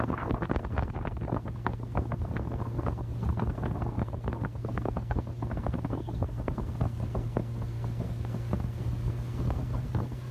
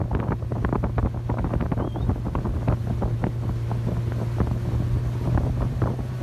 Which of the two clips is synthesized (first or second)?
first